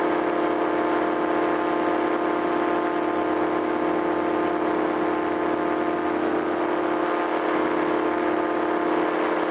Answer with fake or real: real